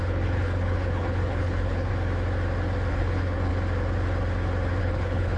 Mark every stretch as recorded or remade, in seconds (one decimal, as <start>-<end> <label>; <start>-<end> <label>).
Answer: 0.0-1.9 remade; 1.9-2.9 recorded; 2.9-3.5 remade; 3.5-4.8 recorded; 4.8-5.4 remade